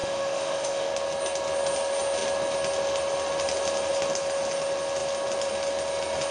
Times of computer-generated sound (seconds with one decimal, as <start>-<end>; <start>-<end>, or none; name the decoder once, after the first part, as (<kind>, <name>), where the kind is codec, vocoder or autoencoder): 0.0-0.9 (autoencoder, DAC-VAE)